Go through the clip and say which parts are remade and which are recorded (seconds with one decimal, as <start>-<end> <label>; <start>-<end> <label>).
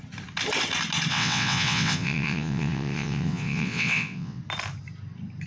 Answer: 0.0-1.1 recorded; 1.1-4.4 remade; 4.4-5.5 recorded